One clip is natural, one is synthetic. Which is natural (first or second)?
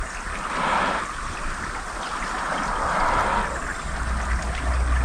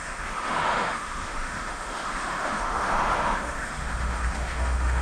first